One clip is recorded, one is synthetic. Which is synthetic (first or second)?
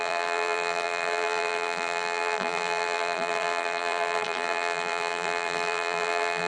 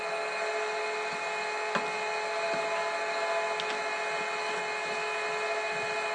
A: first